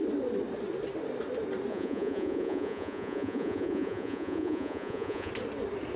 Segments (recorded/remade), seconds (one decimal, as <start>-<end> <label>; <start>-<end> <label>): 0.0-1.7 recorded; 1.7-5.3 remade; 5.3-6.0 recorded